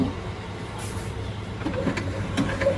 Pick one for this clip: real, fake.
fake